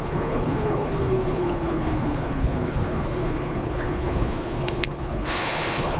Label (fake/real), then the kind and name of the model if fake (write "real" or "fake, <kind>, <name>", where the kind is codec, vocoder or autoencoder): fake, codec, HILCodec